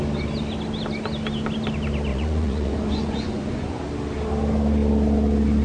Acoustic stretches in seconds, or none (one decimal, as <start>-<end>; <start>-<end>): 0.0-2.1; 3.8-5.6